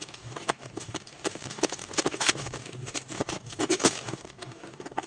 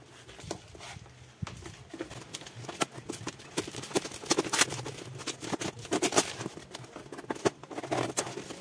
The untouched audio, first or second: second